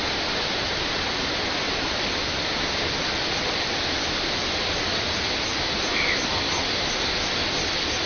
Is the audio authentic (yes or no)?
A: yes